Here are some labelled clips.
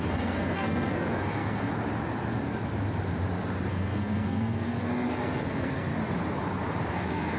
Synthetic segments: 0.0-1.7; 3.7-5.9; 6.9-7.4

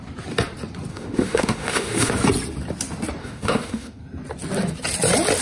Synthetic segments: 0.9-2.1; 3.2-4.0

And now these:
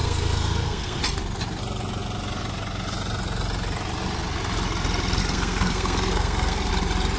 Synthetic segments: 0.0-1.0; 5.2-6.7

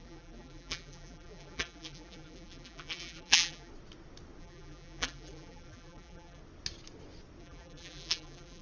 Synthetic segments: 0.0-3.7; 4.4-6.4; 7.4-8.6